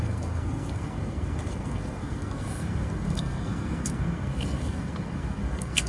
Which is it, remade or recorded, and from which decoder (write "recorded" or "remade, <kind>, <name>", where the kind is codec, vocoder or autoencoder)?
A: remade, codec, SNAC